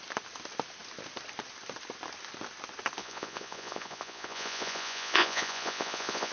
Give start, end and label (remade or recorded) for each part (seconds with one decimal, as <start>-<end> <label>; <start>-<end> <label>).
0.0-3.0 recorded; 3.0-6.3 remade